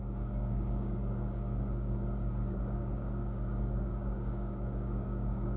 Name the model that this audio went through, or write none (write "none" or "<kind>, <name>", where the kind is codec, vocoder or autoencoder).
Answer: codec, DAC